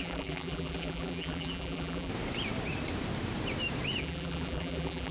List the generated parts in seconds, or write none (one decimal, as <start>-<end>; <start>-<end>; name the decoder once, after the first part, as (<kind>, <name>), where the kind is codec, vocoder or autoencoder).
0.0-2.1 (vocoder, BigVGAN v2); 4.0-5.1